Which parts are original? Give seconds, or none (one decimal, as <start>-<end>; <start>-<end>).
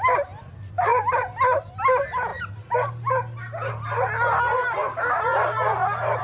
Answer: 0.0-6.2